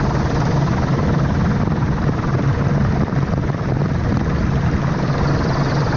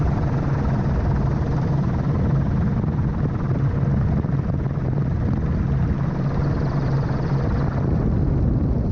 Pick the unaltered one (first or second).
second